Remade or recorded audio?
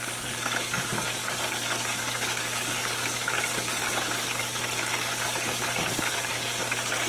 remade